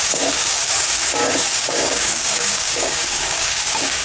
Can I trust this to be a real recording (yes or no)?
no